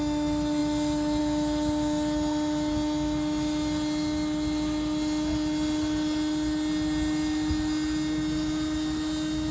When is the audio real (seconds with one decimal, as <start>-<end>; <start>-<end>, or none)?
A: 0.0-9.5